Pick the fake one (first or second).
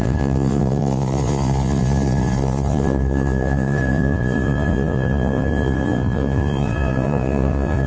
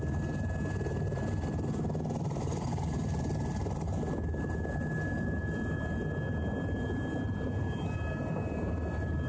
first